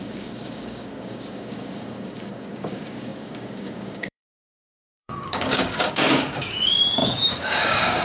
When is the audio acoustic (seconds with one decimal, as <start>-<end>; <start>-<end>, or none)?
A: none